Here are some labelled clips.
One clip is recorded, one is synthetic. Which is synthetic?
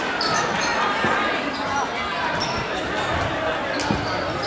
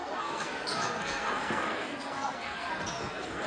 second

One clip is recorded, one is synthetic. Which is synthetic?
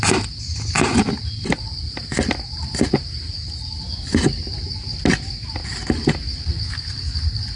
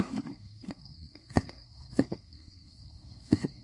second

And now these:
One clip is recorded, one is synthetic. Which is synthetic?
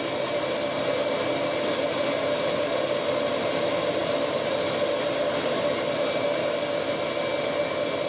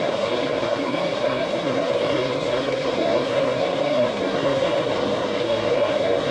second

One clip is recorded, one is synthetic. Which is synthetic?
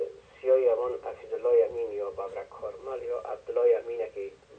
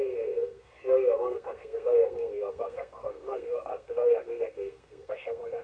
second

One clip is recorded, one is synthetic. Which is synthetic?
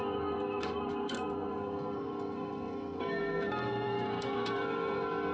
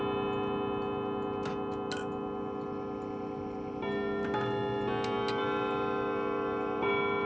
first